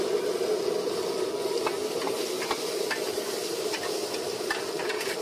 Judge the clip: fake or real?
real